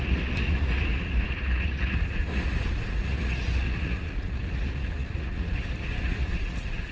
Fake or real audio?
fake